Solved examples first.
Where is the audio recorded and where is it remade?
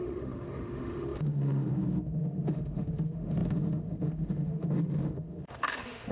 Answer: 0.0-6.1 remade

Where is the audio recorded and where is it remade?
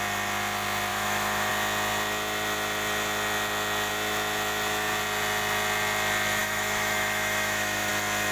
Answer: 0.0-0.9 recorded; 0.9-1.5 remade; 1.5-6.4 recorded; 6.4-7.9 remade; 7.9-8.3 recorded